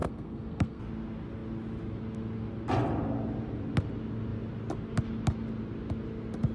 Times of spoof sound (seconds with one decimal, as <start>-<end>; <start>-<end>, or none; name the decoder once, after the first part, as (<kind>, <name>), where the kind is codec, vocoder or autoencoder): 0.0-0.8 (codec, SNAC)